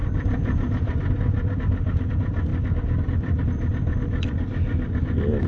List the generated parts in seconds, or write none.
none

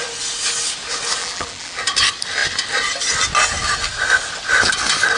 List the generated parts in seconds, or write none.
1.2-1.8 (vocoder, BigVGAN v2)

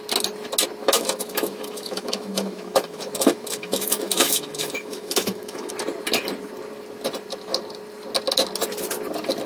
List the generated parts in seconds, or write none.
0.8-5.7 (autoencoder, DAC-VAE)

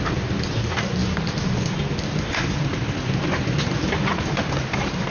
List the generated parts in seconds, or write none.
none

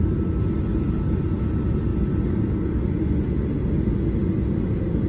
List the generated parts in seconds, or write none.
none

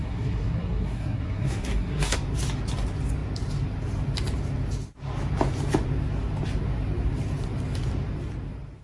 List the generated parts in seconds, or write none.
0.0-2.2 (codec, SNAC)

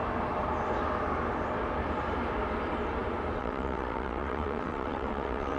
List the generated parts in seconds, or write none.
3.4-5.6 (vocoder, WaveNeXt)